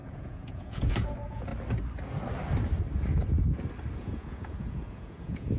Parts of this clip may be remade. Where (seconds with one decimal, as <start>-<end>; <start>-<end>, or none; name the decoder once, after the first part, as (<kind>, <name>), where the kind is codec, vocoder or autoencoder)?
0.0-1.5 (vocoder, Vocos); 4.0-5.6